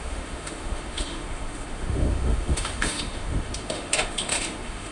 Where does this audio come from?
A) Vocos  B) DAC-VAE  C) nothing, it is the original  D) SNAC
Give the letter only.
B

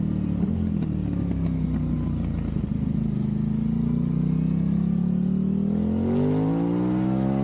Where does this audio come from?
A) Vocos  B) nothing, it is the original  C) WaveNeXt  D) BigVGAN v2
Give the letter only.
B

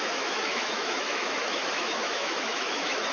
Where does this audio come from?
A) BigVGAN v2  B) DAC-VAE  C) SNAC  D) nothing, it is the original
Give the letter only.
B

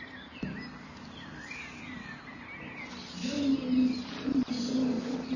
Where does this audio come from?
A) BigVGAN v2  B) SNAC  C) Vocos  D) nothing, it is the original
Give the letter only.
D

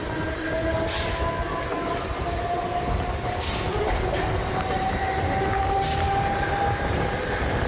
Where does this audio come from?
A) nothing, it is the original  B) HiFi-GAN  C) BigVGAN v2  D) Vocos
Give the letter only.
A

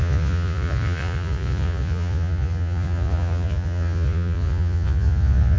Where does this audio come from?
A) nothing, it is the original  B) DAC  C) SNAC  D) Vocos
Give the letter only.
D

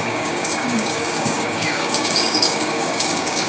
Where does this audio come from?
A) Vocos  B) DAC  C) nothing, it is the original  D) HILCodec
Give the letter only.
B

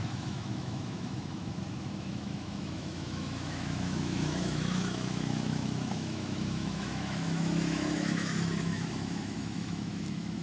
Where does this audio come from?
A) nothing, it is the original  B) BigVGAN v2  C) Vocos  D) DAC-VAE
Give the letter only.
D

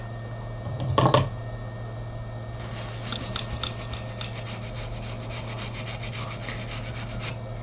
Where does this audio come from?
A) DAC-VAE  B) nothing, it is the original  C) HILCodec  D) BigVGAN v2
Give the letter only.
B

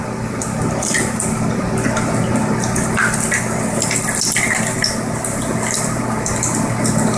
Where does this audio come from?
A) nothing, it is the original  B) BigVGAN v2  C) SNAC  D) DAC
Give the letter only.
A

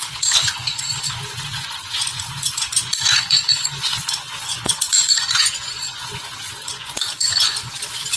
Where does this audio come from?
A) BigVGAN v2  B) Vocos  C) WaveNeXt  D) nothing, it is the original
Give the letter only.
B